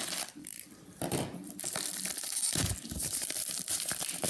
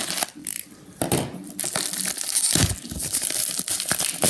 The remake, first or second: first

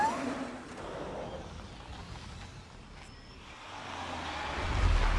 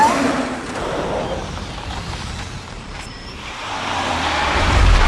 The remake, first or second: second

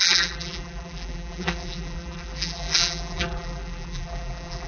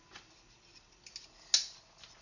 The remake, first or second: first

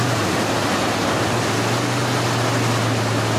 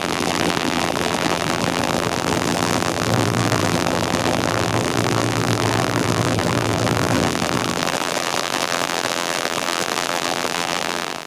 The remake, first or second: second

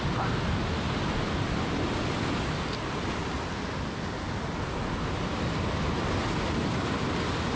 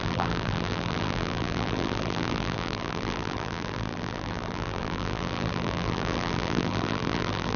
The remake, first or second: second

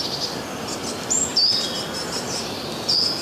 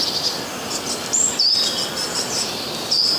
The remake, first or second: second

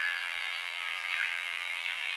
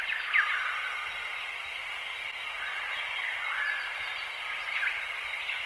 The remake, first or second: first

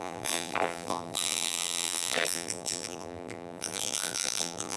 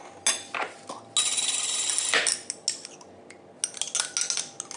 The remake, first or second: first